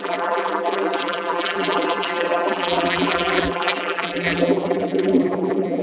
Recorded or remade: remade